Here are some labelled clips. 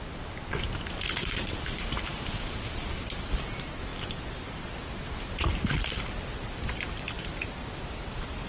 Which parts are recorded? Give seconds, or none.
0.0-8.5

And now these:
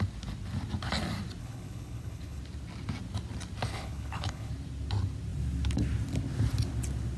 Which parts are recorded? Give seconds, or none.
0.0-1.4; 2.4-3.7; 4.5-7.2

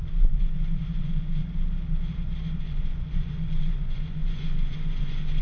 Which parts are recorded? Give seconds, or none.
1.4-2.6

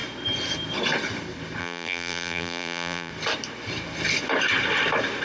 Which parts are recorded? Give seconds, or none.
0.0-1.6; 3.1-5.2

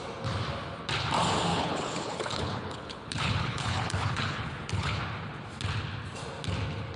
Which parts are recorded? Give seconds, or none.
0.0-1.5; 5.0-7.0